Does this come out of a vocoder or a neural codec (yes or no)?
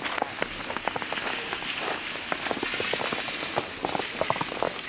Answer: no